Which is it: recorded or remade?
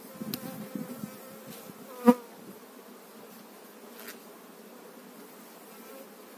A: recorded